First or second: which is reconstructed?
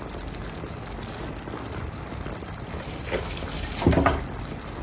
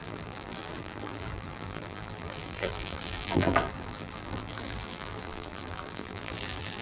second